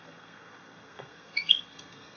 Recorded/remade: remade